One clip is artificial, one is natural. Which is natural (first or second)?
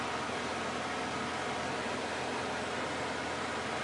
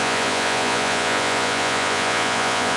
first